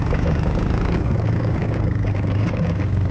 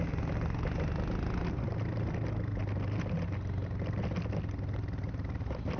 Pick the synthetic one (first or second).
first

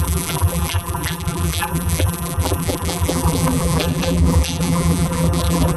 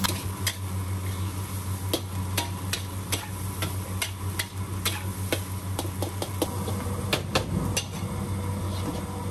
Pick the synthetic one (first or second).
first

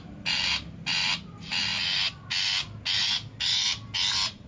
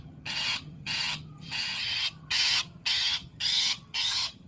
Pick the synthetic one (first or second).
second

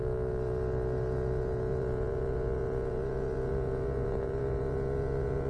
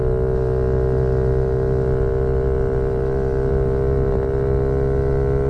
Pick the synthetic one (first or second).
first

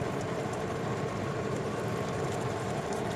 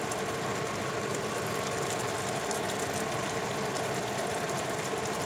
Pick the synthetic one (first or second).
first